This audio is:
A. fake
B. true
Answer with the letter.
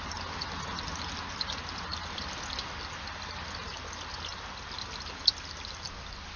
B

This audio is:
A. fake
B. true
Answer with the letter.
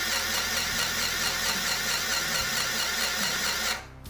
B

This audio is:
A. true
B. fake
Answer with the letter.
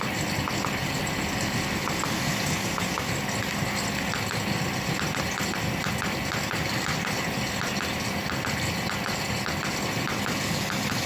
A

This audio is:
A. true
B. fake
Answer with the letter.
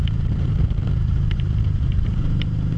B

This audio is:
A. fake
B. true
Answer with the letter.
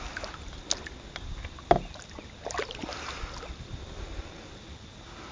B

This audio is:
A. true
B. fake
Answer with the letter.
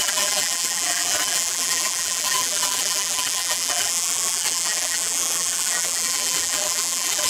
B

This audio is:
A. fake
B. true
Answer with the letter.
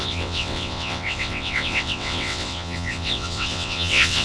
A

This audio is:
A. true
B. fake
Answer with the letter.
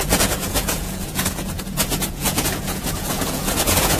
B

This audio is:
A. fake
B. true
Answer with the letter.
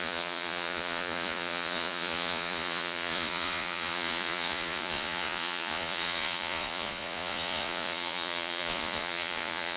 A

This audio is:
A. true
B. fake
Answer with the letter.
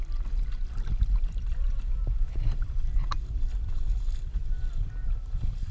A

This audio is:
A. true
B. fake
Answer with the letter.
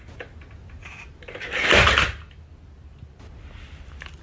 A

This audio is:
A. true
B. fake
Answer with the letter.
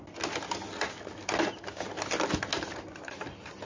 A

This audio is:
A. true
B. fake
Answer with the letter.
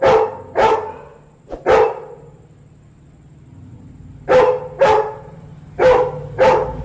A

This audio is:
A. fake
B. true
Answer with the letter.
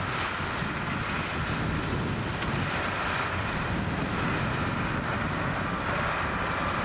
B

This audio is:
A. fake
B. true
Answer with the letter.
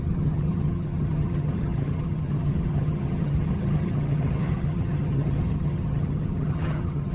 A